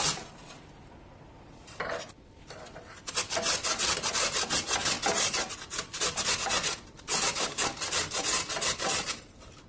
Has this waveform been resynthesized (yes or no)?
no